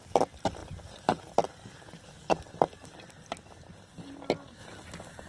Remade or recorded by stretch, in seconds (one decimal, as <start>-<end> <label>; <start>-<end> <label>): 0.0-5.3 recorded